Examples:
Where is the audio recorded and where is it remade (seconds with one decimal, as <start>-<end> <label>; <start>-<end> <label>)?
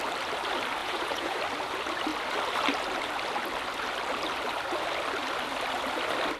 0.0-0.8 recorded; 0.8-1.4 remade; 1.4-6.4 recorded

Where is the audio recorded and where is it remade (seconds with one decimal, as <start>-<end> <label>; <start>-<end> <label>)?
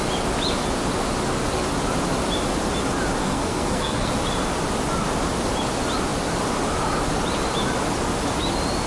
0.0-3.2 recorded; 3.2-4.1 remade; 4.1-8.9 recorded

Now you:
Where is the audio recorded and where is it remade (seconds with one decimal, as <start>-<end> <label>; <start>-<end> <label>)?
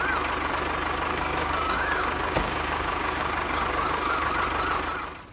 0.0-1.1 recorded; 1.1-4.3 remade; 4.3-5.3 recorded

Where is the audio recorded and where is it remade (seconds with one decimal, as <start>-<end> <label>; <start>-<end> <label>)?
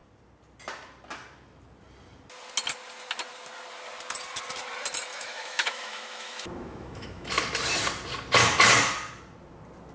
0.0-5.1 recorded; 5.1-7.3 remade; 7.3-9.9 recorded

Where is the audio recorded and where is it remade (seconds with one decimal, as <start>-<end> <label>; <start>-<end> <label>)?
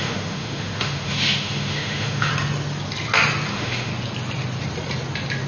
0.0-2.3 remade; 2.3-3.5 recorded; 3.5-3.9 remade; 3.9-5.5 recorded